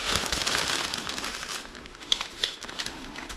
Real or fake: fake